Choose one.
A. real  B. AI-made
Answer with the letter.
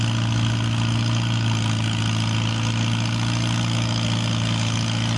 A